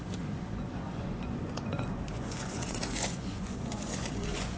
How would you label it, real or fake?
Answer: fake